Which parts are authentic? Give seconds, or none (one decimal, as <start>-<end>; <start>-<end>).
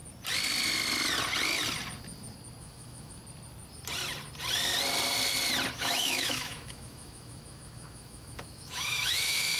0.0-2.6; 3.2-5.7